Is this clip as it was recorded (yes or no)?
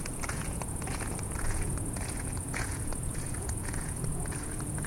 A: no